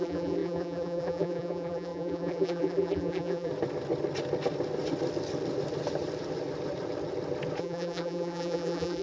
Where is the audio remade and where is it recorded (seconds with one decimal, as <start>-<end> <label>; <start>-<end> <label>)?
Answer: 0.0-3.5 remade; 3.5-7.6 recorded; 7.6-9.0 remade